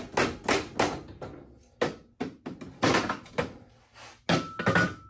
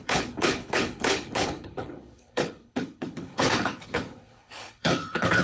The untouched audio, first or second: first